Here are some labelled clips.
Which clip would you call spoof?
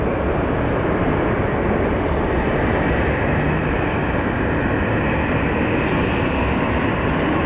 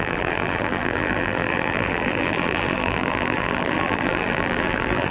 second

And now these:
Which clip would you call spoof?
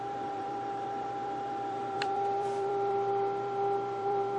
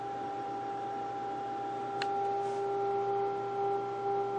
first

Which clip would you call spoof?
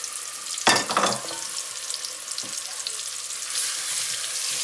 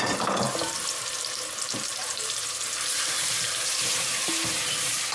second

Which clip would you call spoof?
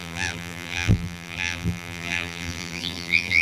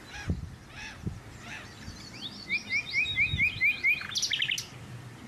first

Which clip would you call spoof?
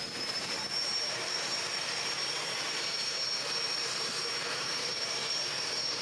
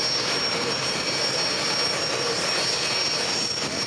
first